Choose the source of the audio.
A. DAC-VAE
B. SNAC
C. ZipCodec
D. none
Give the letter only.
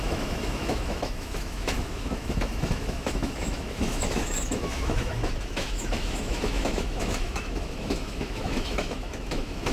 A